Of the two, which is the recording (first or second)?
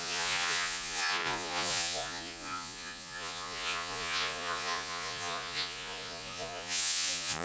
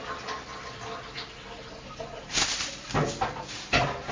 second